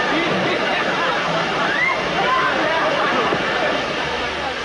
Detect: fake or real real